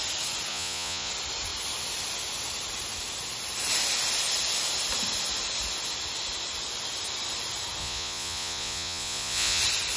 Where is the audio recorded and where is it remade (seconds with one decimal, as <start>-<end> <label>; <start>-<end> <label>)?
0.0-0.5 recorded; 0.5-1.1 remade; 1.1-7.8 recorded; 7.8-9.6 remade; 9.6-10.0 recorded